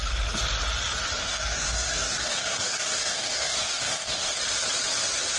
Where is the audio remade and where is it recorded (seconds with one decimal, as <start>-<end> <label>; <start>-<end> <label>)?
0.0-1.2 recorded; 1.2-4.4 remade; 4.4-5.4 recorded